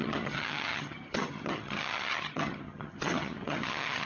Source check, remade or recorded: remade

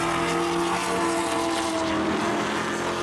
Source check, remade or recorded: recorded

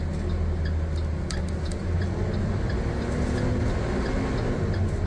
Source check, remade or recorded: recorded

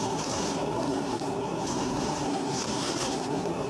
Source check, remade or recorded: remade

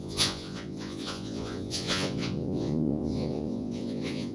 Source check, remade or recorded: remade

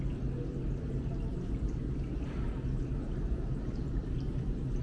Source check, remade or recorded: recorded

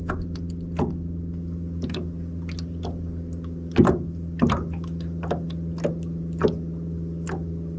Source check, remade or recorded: recorded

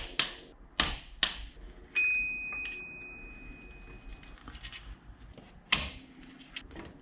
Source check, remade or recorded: recorded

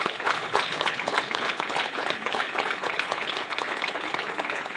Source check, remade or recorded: remade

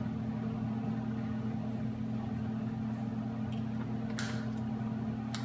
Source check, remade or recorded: recorded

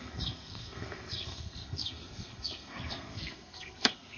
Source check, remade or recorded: remade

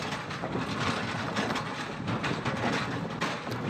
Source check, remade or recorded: recorded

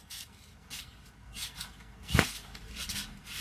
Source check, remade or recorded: remade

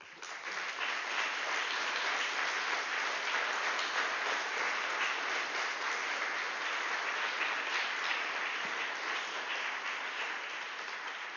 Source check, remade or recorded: recorded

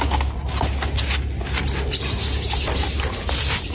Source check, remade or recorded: recorded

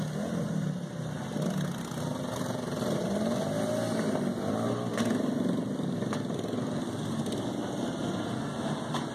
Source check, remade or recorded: recorded